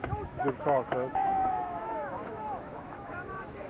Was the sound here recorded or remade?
remade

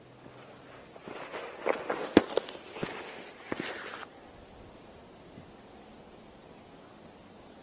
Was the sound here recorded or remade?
recorded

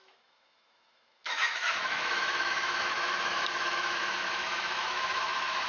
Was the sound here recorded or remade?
remade